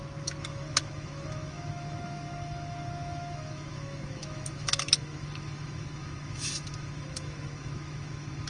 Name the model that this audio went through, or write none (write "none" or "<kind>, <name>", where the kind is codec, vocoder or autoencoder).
autoencoder, DAC-VAE